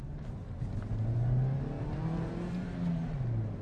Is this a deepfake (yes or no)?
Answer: no